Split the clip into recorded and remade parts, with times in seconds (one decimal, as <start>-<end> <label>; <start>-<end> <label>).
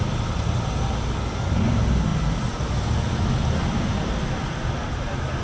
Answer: 0.0-5.4 recorded